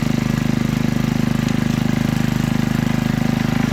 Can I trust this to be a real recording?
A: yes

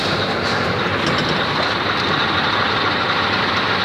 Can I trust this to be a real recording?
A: yes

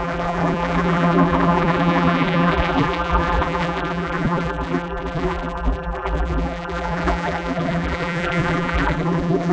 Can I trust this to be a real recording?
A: no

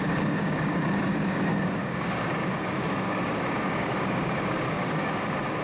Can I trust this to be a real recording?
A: no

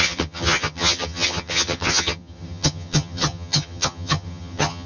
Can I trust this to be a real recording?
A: no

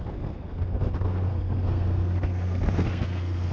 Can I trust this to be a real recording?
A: no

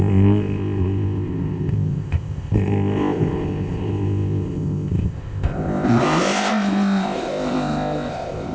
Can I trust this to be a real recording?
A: no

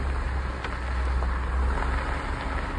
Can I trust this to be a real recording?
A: yes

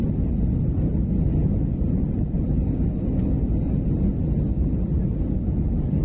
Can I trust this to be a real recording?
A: yes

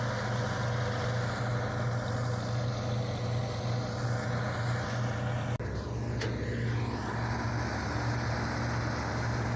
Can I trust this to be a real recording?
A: yes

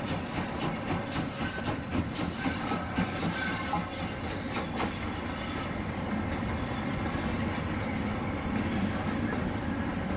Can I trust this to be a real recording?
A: yes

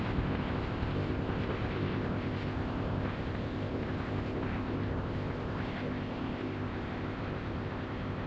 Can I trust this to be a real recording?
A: no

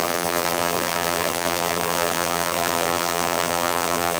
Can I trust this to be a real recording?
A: no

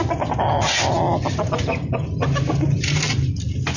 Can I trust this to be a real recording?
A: yes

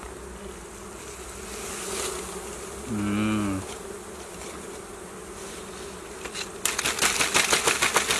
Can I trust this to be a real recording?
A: yes